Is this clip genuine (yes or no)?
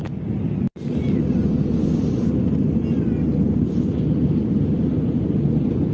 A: yes